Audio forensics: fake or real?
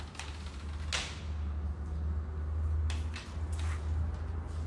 real